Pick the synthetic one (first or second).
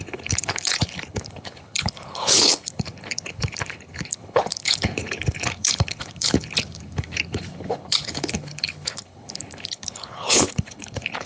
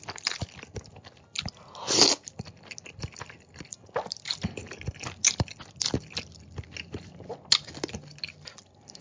first